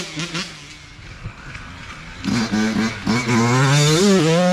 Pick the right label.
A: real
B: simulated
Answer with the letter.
A